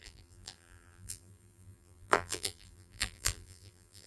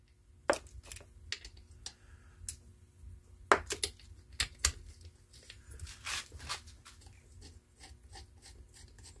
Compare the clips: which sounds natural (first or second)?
second